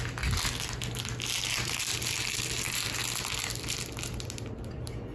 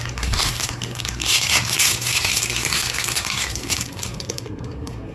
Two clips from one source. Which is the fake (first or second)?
second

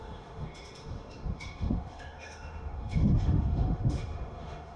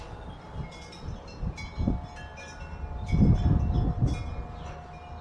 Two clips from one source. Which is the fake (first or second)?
first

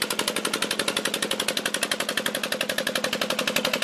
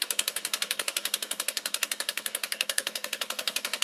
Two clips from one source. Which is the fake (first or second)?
second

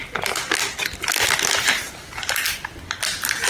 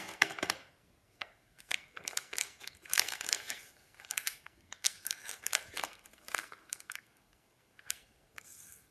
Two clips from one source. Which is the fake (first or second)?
second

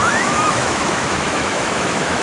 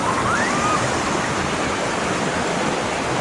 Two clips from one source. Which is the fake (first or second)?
first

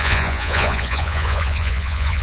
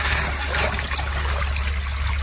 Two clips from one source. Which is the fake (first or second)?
first